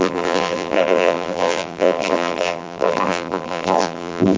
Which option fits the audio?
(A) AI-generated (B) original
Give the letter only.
A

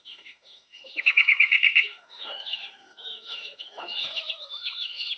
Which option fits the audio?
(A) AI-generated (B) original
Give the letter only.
A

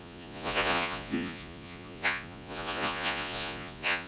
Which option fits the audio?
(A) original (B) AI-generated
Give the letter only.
B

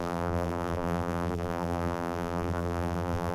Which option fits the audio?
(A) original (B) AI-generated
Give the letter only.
B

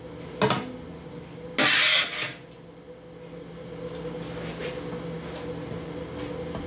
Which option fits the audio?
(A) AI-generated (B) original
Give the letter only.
B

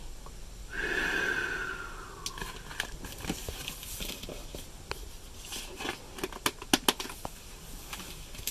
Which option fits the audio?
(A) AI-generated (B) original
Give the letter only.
B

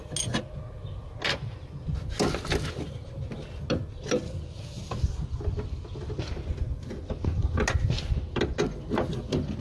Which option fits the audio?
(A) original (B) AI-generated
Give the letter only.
A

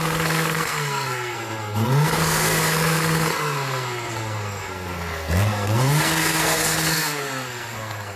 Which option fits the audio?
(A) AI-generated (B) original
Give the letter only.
A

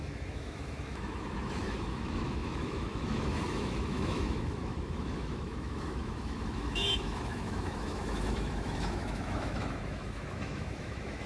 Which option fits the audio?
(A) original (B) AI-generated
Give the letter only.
B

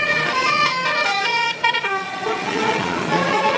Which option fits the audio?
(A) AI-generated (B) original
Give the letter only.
A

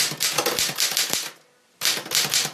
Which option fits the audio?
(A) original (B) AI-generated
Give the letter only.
A